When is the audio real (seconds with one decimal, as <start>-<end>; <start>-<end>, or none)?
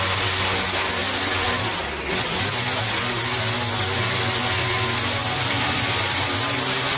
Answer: 0.0-5.2; 6.2-7.0